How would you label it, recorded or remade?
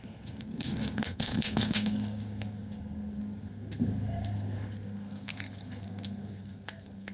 remade